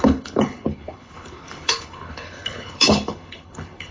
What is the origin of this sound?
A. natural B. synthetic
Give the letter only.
B